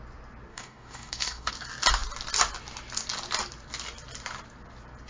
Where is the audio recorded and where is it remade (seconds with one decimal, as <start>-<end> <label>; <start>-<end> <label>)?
0.0-0.5 recorded; 0.5-1.5 remade; 1.5-5.1 recorded